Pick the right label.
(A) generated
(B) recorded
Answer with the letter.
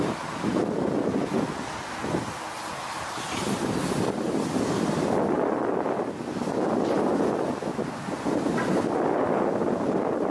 B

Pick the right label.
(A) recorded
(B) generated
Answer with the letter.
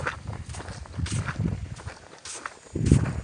A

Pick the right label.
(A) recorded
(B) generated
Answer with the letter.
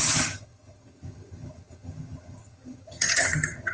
B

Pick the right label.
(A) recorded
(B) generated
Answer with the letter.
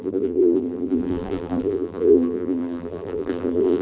B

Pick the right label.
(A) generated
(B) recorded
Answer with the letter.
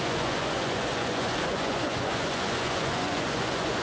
A